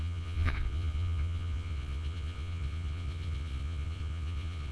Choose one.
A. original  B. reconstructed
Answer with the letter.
B